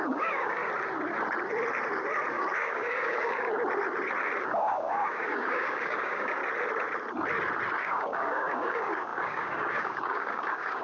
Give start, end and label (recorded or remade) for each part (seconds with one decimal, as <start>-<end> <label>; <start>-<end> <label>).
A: 0.0-0.6 remade; 0.6-2.3 recorded; 2.3-3.5 remade; 3.5-4.4 recorded; 4.4-6.4 remade; 6.4-7.8 recorded; 7.8-10.8 remade